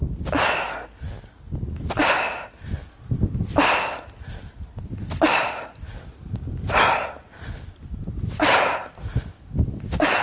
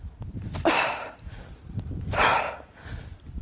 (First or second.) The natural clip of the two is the first